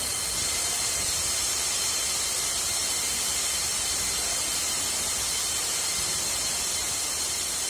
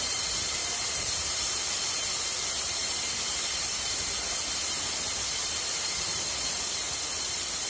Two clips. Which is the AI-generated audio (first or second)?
second